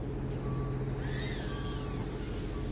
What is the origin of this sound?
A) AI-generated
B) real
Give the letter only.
B